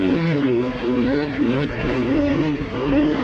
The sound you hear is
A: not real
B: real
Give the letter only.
A